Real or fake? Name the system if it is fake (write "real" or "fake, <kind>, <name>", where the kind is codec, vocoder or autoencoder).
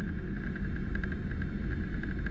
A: real